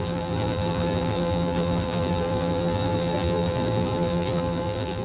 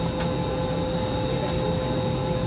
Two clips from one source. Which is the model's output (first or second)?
first